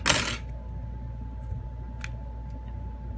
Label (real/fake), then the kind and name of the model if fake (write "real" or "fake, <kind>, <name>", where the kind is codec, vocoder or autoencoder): real